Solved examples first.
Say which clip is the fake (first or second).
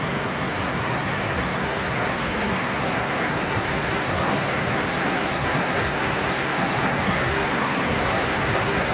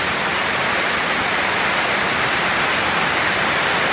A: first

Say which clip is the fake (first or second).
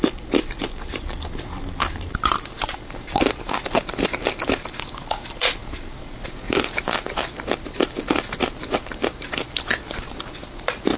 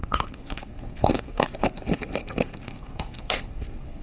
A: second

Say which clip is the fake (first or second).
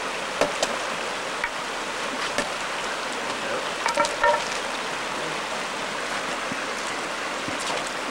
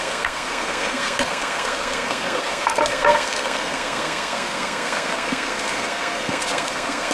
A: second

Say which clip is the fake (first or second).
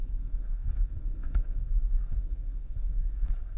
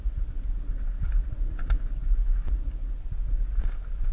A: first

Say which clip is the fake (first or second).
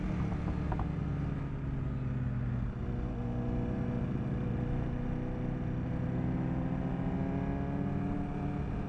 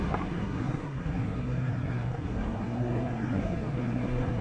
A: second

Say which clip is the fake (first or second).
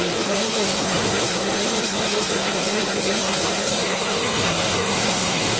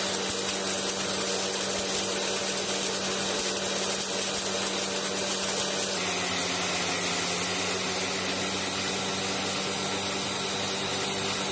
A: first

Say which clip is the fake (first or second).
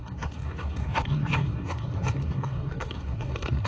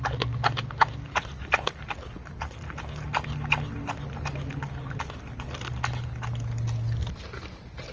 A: first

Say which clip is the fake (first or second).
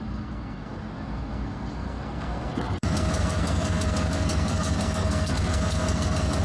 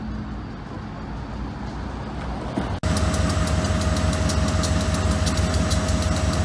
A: first